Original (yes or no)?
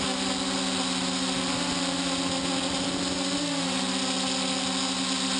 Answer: yes